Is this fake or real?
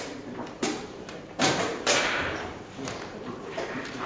fake